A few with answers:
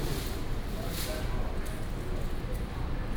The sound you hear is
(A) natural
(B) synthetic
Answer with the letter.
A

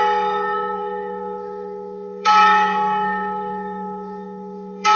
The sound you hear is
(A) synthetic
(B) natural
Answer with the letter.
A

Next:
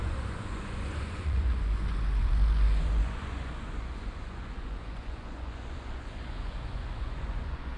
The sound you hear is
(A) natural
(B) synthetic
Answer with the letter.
B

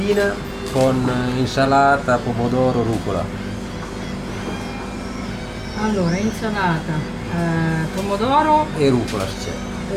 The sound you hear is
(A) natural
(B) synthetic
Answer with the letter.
A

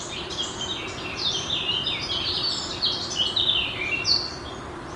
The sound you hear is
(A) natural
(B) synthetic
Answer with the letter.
A